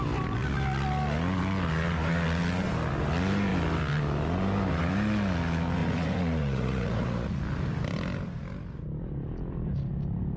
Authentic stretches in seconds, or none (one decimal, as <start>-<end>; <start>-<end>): 0.0-5.8; 7.4-10.4